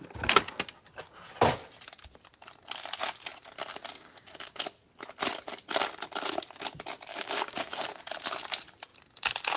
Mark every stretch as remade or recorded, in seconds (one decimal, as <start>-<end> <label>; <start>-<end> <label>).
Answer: 0.0-3.9 recorded; 3.9-4.6 remade; 4.6-7.1 recorded; 7.1-8.0 remade; 8.0-9.6 recorded